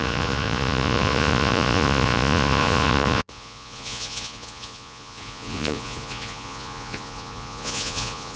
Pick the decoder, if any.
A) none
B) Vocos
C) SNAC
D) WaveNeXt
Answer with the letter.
B